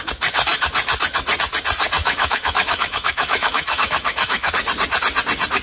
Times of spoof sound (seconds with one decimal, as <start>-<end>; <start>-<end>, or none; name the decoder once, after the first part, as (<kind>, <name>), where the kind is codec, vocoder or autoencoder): 2.0-4.5 (autoencoder, DAC-VAE)

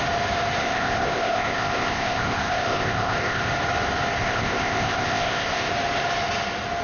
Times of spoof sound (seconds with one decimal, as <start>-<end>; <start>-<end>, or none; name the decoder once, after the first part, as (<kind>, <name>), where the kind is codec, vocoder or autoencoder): 0.6-3.5 (codec, ZipCodec); 4.2-5.7

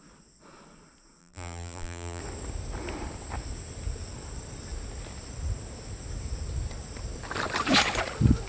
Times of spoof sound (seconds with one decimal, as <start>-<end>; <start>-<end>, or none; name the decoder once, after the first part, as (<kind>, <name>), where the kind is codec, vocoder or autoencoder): 1.2-2.2 (vocoder, BigVGAN v2)

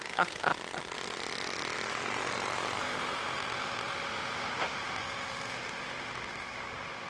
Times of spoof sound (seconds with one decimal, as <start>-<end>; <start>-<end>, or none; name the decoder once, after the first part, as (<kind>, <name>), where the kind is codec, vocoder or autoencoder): 0.0-0.5 (autoencoder, DAC-VAE); 2.8-7.1

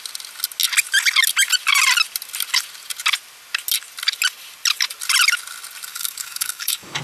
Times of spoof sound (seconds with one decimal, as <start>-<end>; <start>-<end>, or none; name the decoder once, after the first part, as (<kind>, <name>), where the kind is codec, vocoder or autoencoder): 5.9-7.0 (codec, DAC)